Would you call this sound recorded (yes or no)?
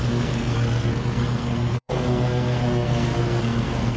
no